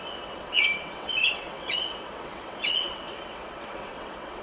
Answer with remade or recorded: remade